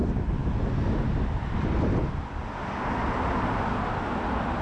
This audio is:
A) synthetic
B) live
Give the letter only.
B